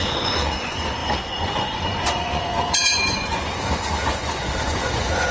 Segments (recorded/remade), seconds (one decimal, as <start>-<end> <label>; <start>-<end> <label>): 0.0-5.3 remade